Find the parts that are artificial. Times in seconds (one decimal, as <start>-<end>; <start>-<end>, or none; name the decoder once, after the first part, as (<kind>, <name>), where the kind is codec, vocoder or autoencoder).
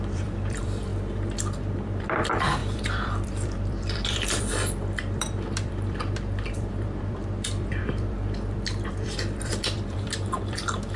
0.0-0.9 (vocoder, BigVGAN v2); 2.0-11.0